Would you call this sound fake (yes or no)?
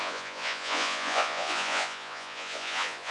yes